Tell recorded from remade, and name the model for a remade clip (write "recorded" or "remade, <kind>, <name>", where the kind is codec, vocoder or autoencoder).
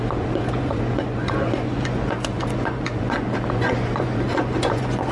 remade, vocoder, Vocos